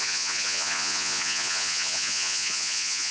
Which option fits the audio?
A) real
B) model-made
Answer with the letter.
B